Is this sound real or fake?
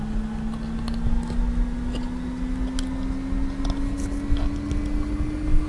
real